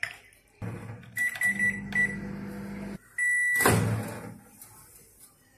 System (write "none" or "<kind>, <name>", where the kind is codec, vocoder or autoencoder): none